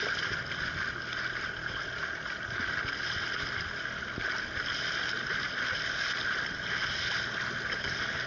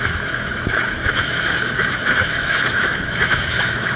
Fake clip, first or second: second